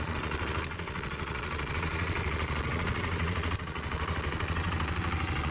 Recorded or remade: remade